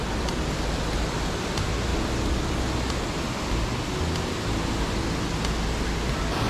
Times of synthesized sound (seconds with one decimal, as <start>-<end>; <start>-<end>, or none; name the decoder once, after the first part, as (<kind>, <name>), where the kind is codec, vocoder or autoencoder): none